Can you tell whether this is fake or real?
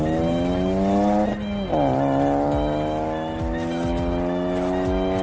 real